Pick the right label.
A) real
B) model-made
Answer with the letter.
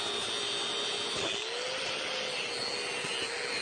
A